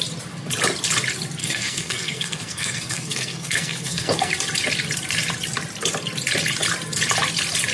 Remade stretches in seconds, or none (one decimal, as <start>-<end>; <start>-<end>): 1.4-4.3